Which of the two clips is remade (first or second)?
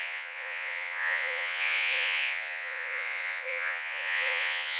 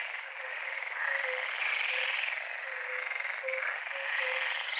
first